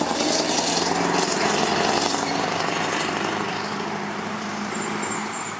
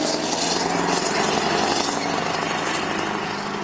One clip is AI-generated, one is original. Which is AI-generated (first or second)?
first